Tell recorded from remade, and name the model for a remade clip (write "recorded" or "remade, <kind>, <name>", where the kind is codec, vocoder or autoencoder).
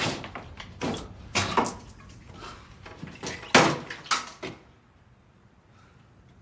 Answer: recorded